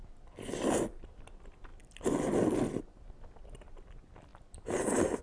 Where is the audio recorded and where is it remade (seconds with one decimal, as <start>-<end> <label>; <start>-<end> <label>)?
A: 0.0-5.2 recorded